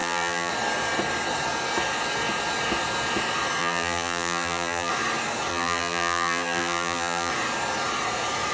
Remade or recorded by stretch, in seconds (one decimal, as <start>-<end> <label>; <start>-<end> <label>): 0.0-0.5 remade; 0.5-3.6 recorded; 3.6-4.9 remade; 4.9-5.5 recorded; 5.5-7.3 remade; 7.3-8.5 recorded